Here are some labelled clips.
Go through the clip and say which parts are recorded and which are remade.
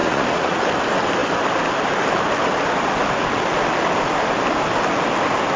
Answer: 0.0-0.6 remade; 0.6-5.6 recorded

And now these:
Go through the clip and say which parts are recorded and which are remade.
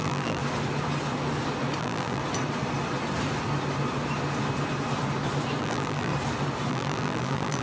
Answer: 0.0-0.4 remade; 0.4-1.8 recorded; 1.8-2.2 remade; 2.2-5.6 recorded; 5.6-6.1 remade; 6.1-6.7 recorded; 6.7-7.6 remade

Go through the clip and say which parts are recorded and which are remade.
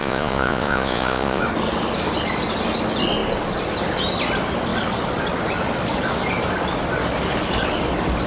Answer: 0.0-1.4 remade; 1.4-8.3 recorded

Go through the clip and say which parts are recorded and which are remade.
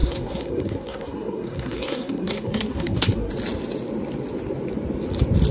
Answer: 0.0-3.3 remade; 3.3-5.5 recorded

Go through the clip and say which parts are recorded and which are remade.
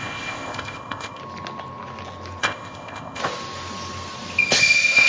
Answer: 0.0-1.2 remade; 1.2-2.4 recorded; 2.4-3.2 remade; 3.2-4.6 recorded; 4.6-5.1 remade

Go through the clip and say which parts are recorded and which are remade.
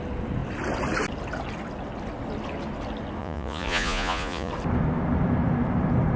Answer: 0.0-3.2 recorded; 3.2-4.5 remade; 4.5-6.2 recorded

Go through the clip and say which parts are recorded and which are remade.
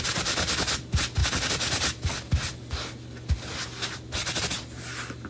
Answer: 0.0-5.3 recorded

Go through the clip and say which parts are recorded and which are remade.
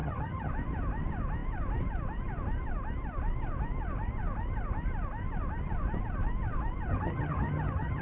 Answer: 0.0-0.5 remade; 0.5-6.9 recorded; 6.9-8.0 remade